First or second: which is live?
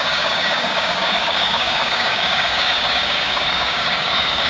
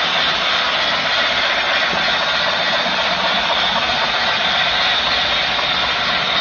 second